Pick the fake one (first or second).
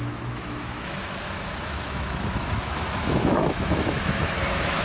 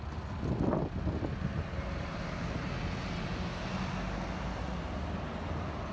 first